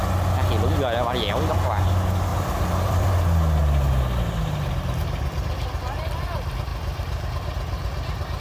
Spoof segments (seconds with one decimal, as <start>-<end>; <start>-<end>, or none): 2.3-3.1; 3.6-4.7